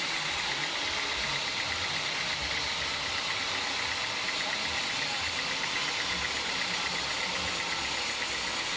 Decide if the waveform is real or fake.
real